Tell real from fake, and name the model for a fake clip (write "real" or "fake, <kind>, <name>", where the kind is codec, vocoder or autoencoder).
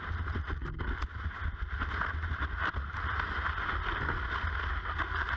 real